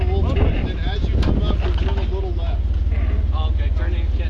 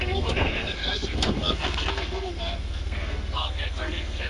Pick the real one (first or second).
first